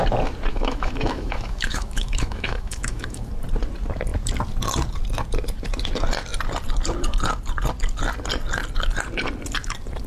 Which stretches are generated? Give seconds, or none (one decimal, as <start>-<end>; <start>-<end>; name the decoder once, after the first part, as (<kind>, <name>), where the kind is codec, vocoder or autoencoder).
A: 0.5-3.3 (autoencoder, DAC-VAE)